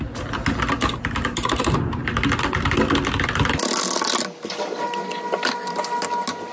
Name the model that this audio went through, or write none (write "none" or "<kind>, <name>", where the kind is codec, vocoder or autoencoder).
none